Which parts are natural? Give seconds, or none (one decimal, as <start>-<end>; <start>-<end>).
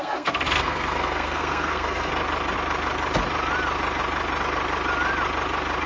2.1-5.9